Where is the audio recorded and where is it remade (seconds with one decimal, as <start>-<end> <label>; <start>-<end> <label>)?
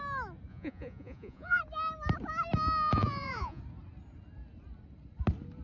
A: 0.0-0.5 recorded; 0.5-1.6 remade; 1.6-2.9 recorded; 2.9-3.6 remade; 3.6-5.6 recorded